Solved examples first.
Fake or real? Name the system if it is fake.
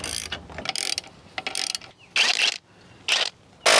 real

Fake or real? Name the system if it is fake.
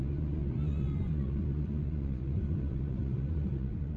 fake, vocoder, Vocos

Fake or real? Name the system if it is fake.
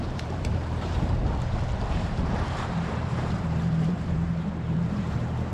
fake, vocoder, BigVGAN v2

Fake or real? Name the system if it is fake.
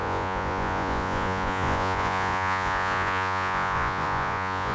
fake, vocoder, Vocos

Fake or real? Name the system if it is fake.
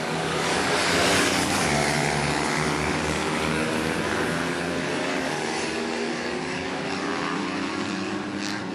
fake, codec, DAC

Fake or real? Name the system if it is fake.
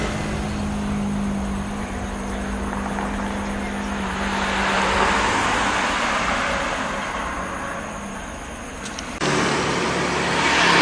real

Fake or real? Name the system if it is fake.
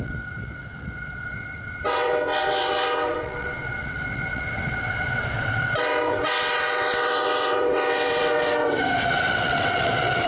fake, vocoder, WaveNeXt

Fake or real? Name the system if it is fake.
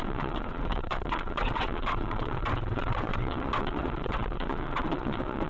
fake, vocoder, WaveNeXt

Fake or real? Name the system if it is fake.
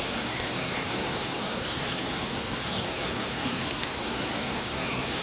fake, codec, SNAC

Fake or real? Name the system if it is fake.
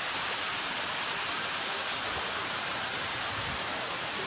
fake, vocoder, BigVGAN v2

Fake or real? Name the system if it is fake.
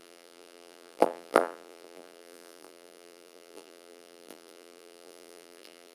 fake, vocoder, BigVGAN v2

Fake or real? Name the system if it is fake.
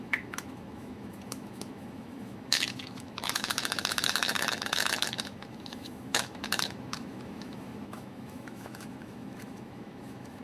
fake, autoencoder, DAC-VAE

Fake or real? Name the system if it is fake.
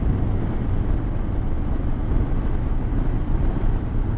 real